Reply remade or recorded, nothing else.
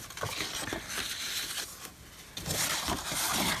recorded